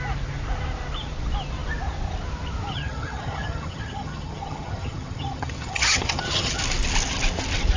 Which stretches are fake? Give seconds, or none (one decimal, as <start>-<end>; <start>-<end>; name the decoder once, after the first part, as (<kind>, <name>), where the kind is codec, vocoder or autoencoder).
2.7-6.6 (vocoder, HiFi-GAN)